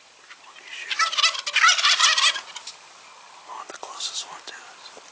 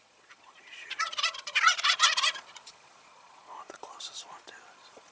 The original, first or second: first